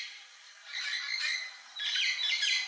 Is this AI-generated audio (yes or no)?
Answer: no